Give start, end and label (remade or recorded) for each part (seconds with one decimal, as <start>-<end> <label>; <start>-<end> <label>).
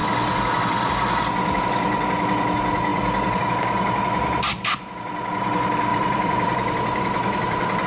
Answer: 0.0-2.9 recorded; 2.9-3.4 remade; 3.4-5.9 recorded; 5.9-7.9 remade